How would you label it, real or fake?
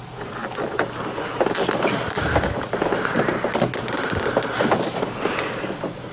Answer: real